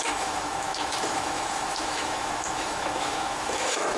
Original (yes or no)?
no